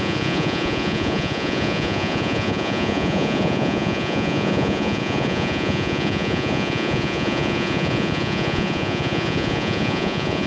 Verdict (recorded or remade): remade